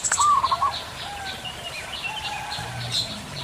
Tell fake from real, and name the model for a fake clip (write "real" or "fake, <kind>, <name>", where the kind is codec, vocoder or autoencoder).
fake, vocoder, BigVGAN v2